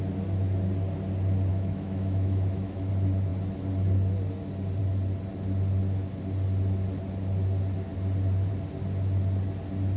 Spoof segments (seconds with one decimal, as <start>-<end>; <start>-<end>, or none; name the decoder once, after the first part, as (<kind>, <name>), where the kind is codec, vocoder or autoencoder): 1.5-2.9 (autoencoder, DAC-VAE)